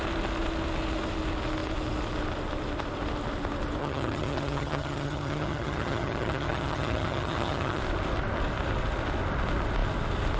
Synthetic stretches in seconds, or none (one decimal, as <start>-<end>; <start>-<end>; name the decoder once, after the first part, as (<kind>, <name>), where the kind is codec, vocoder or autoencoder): 3.8-7.8 (vocoder, HiFi-GAN)